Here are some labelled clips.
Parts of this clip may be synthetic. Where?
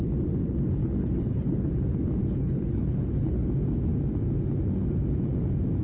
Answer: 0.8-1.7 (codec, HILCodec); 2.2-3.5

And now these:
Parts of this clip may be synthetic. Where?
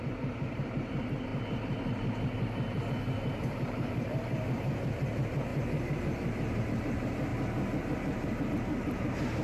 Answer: 0.0-7.3 (vocoder, BigVGAN v2); 8.5-9.4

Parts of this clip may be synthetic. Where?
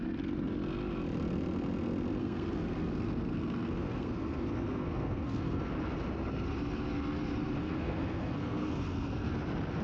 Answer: 2.2-5.7 (codec, SNAC); 7.6-9.3